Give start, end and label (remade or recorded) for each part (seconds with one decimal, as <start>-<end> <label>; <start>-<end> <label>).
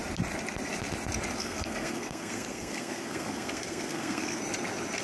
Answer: 0.0-1.4 recorded; 1.4-4.4 remade; 4.4-5.0 recorded